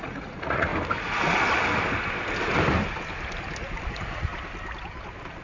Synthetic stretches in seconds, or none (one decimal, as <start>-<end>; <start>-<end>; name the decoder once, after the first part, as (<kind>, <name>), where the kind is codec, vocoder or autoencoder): 0.0-0.7 (vocoder, Vocos); 3.9-4.3